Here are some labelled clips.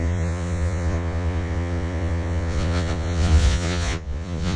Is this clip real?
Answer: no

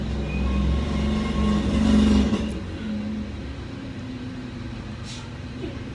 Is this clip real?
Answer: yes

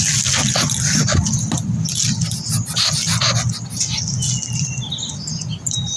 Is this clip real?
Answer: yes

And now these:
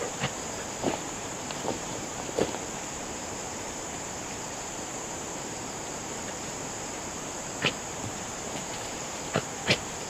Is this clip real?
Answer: no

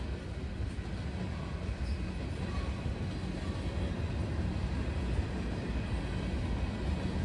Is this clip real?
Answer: yes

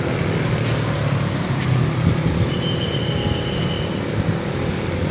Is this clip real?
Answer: yes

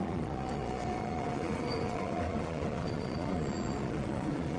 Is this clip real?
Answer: no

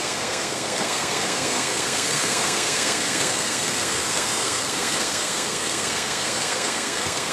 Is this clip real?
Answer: no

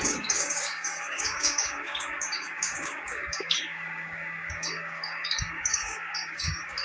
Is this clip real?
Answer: no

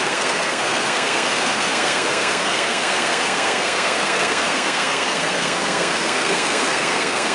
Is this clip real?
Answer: no